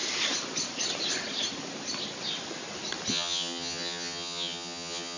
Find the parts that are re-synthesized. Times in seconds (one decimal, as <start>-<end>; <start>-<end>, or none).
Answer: 3.1-5.2